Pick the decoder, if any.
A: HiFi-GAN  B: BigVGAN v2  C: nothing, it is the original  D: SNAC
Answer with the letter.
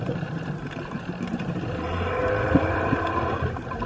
B